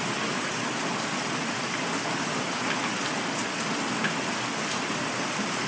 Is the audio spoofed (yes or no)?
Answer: no